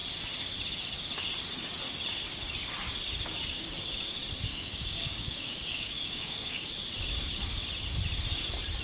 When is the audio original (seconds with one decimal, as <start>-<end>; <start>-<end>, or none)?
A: 0.0-4.5; 6.7-8.8